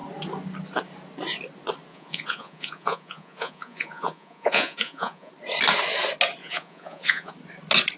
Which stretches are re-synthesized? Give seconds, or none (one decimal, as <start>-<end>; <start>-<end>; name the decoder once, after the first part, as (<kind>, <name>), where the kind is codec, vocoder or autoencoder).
1.9-5.3 (vocoder, Vocos); 6.4-7.3